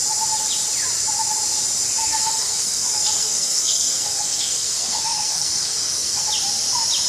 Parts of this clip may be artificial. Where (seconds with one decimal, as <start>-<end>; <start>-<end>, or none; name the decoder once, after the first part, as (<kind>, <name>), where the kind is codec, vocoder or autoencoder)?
2.0-6.3 (codec, SNAC)